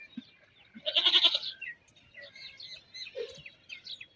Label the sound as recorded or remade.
recorded